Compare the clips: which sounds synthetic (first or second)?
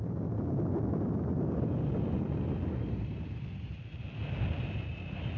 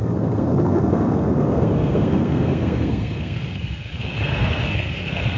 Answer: second